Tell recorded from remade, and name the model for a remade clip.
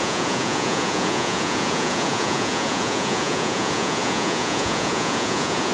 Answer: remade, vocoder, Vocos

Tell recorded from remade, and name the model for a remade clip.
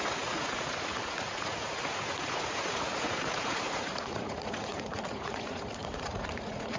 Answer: remade, vocoder, Vocos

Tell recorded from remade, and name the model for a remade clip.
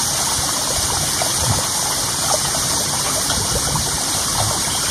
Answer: recorded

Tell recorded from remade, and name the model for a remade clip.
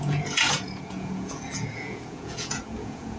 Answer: remade, vocoder, Vocos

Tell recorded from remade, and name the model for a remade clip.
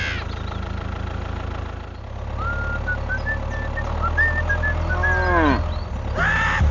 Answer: recorded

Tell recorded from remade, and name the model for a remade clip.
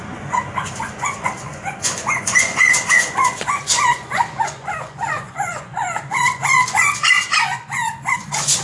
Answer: remade, vocoder, Vocos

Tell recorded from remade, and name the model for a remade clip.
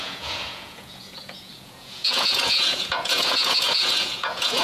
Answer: remade, vocoder, Vocos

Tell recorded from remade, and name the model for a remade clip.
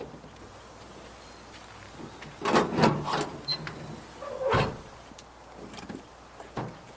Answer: recorded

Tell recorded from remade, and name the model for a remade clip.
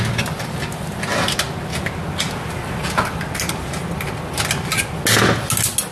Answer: recorded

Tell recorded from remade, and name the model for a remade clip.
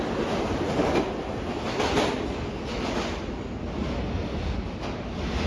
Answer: recorded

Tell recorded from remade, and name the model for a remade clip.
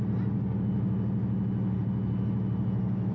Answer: recorded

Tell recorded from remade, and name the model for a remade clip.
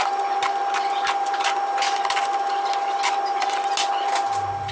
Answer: recorded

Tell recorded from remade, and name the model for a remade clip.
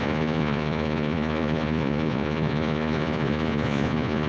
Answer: remade, vocoder, Vocos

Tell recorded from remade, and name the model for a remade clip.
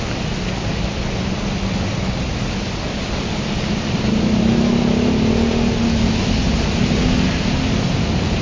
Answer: recorded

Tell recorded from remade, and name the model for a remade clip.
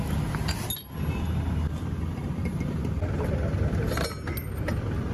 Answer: recorded